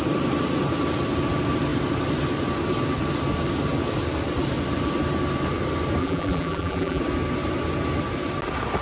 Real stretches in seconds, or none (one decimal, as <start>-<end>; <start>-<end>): 0.0-6.0; 7.0-8.8